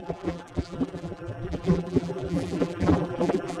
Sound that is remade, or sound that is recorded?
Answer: remade